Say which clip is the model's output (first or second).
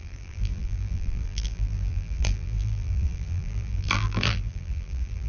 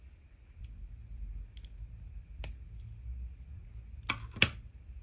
first